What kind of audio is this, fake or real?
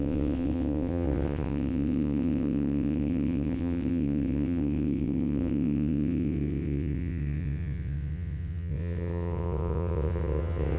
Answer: fake